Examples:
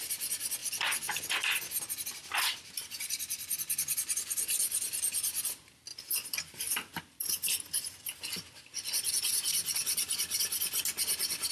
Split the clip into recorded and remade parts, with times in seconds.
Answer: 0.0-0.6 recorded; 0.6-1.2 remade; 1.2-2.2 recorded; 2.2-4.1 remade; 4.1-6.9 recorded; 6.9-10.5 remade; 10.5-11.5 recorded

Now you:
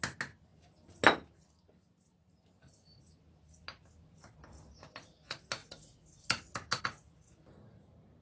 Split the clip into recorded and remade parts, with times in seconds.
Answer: 0.0-8.2 recorded

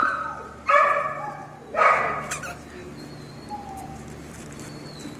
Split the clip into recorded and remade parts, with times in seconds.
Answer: 0.0-0.8 recorded; 0.8-1.4 remade; 1.4-1.9 recorded; 1.9-2.8 remade; 2.8-3.8 recorded; 3.8-5.2 remade

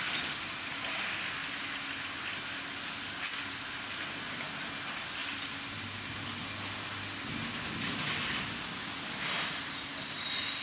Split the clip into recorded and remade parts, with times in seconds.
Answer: 0.0-10.6 recorded